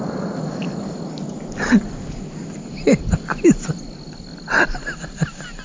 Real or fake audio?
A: real